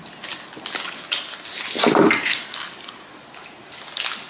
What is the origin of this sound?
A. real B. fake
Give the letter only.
A